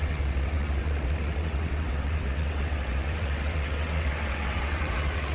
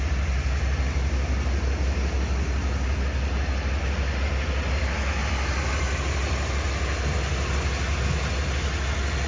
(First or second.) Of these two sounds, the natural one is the second